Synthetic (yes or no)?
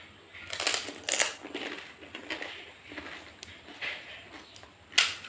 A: no